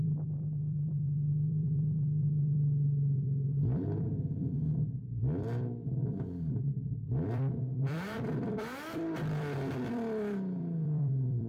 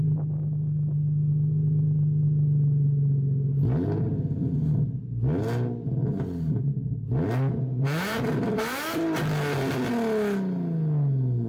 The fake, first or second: first